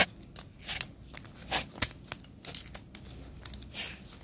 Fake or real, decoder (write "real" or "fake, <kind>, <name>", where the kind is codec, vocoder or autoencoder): real